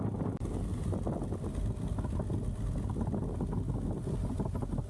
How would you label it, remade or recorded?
recorded